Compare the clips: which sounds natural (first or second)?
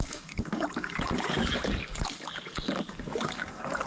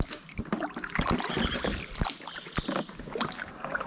second